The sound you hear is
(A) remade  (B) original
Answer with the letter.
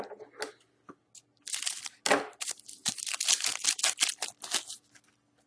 B